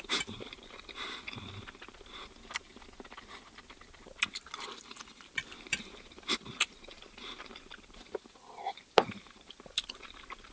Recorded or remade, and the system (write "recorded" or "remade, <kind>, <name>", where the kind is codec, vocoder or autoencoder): recorded